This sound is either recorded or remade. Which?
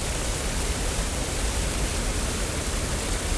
remade